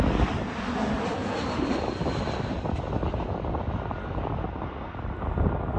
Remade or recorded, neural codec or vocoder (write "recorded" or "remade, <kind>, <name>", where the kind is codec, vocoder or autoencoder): recorded